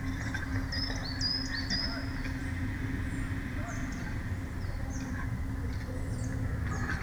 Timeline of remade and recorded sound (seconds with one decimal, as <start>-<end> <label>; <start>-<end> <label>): 0.0-7.0 recorded